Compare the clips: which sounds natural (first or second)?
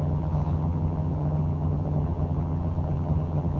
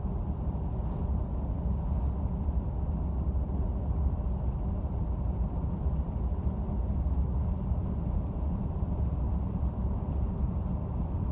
second